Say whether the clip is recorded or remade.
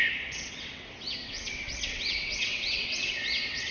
remade